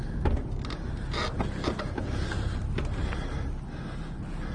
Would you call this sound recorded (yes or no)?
yes